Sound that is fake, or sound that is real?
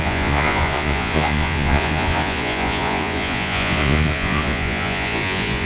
fake